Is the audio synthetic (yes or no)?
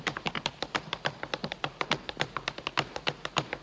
no